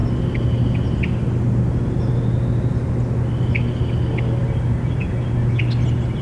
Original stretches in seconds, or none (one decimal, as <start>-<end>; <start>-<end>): 0.0-6.2